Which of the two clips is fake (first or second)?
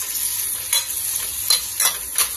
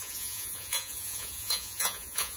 second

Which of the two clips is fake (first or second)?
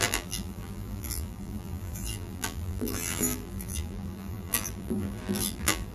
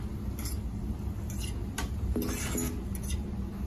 first